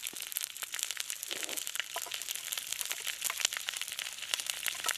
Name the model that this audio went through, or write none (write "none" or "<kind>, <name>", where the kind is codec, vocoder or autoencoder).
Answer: none